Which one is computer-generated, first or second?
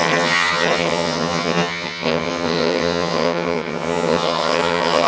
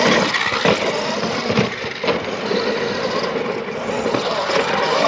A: first